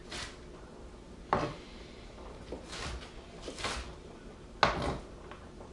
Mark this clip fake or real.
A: real